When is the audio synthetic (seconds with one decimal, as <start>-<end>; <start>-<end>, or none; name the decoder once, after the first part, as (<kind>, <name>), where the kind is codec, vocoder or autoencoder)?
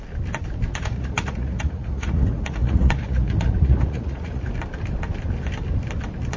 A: 0.7-4.5 (vocoder, Vocos)